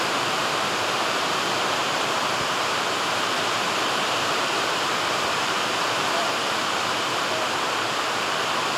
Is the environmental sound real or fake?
fake